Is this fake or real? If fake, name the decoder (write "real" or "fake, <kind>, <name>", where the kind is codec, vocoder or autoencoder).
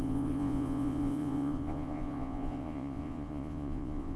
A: fake, vocoder, Vocos